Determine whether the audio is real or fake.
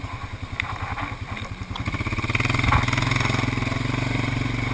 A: real